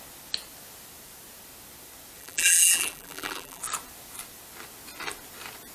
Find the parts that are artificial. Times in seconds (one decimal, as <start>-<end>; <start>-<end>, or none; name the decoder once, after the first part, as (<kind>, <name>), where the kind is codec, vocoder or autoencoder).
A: 2.2-3.6 (vocoder, BigVGAN v2)